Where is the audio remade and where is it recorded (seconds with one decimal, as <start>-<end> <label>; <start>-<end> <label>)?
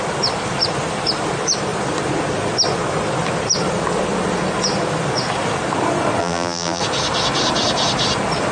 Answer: 0.0-6.2 recorded; 6.2-6.8 remade; 6.8-8.5 recorded